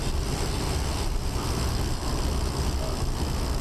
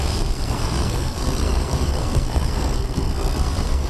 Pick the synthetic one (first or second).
second